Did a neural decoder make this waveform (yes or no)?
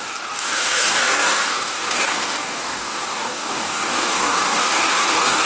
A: yes